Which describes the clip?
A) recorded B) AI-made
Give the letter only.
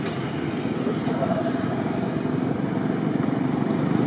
A